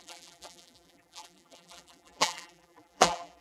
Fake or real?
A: fake